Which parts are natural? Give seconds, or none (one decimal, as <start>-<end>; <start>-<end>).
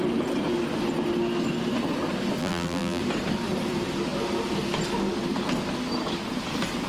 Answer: 0.0-2.4; 3.0-6.9